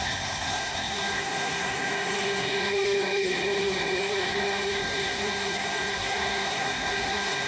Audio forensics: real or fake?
fake